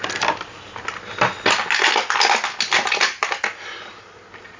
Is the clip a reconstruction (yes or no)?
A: no